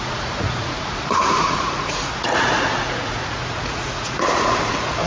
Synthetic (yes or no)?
yes